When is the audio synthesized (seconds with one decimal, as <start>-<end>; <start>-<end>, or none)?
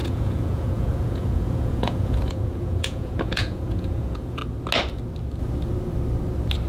0.0-4.4